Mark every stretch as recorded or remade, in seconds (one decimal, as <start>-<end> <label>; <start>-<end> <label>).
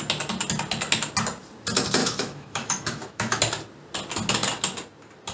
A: 0.0-2.0 recorded; 2.0-3.4 remade; 3.4-5.3 recorded